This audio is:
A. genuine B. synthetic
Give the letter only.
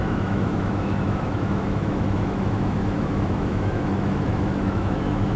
B